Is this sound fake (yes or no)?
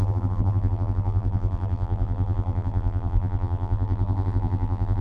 yes